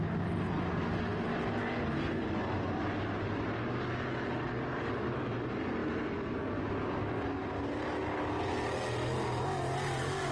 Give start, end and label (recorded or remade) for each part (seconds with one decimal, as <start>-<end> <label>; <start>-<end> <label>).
0.0-5.8 recorded; 5.8-7.3 remade; 7.3-10.3 recorded